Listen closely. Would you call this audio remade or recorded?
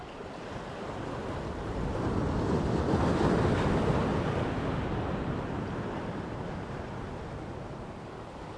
recorded